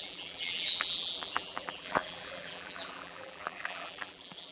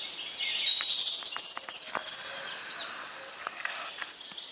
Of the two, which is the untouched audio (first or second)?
second